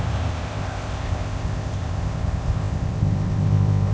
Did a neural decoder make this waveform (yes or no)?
yes